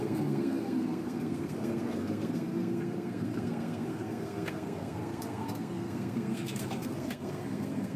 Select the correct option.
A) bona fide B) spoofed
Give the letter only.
B